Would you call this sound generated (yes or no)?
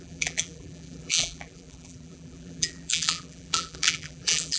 yes